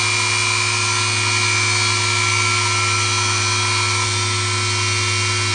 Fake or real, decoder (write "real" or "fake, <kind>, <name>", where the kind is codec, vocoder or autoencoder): real